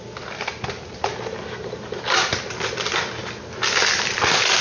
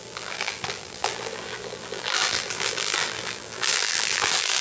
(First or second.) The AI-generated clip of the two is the second